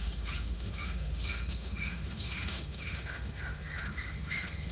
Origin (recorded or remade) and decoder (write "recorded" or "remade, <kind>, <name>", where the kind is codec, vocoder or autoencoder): remade, autoencoder, DAC-VAE